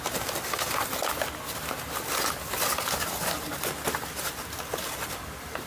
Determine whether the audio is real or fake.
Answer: real